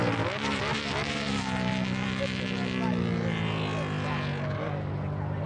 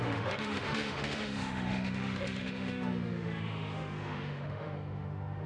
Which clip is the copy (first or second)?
second